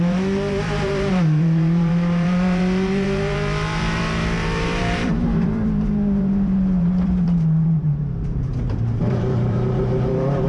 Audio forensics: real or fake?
fake